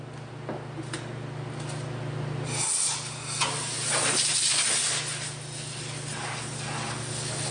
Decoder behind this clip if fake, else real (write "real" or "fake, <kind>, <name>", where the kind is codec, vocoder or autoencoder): real